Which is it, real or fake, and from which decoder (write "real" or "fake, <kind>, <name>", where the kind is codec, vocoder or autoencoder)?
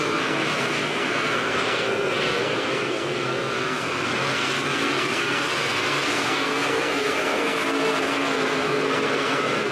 fake, codec, SNAC